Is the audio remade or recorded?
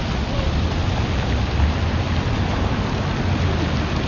recorded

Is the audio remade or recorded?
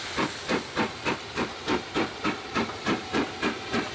remade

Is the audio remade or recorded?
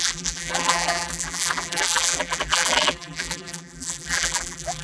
remade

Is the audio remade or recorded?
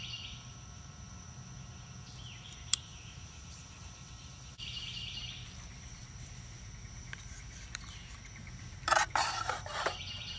remade